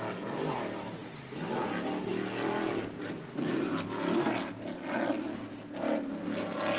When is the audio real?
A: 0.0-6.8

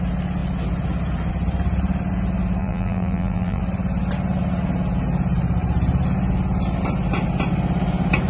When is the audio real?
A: 0.0-2.6; 3.6-8.3

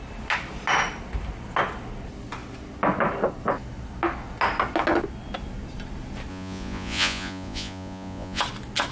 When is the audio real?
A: 0.0-6.3; 8.4-8.9